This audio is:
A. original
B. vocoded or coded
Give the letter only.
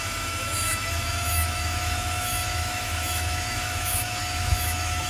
B